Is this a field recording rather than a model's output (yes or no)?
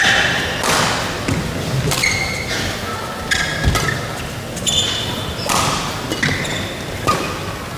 yes